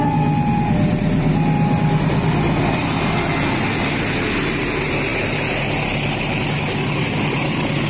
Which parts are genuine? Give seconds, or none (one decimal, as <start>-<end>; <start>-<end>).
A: 0.0-7.9